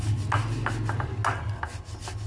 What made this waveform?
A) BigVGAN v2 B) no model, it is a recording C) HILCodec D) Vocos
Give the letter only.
B